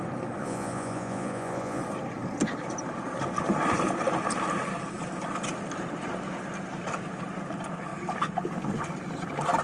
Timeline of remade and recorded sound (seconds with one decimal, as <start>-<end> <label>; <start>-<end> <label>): 0.0-0.4 recorded; 0.4-1.8 remade; 1.8-9.6 recorded